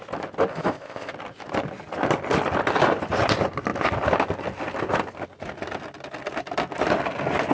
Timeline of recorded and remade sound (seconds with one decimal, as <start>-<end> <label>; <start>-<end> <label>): 0.0-0.5 recorded; 0.5-1.1 remade; 1.1-7.5 recorded